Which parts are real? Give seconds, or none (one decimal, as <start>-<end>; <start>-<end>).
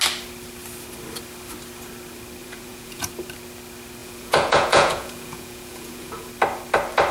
0.0-2.4; 3.1-4.0; 6.3-7.1